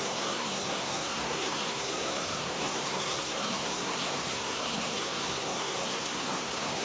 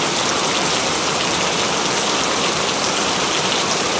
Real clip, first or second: second